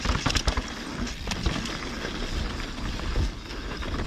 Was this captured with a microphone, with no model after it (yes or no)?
yes